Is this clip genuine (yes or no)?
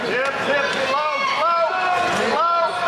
yes